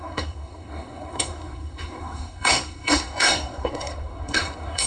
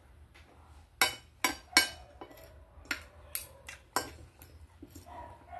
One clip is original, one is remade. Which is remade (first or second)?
first